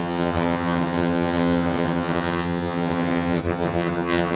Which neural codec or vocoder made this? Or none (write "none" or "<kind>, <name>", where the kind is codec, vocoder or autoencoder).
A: vocoder, HiFi-GAN